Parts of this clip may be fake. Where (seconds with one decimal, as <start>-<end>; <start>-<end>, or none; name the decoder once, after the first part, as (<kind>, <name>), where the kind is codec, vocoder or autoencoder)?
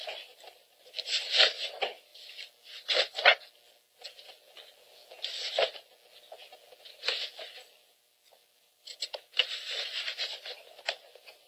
0.0-2.1 (vocoder, BigVGAN v2); 6.8-11.5